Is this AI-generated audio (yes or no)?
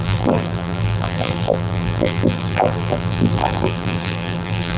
yes